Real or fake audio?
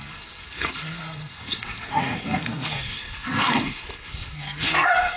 fake